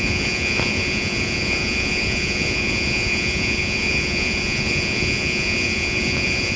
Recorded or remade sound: remade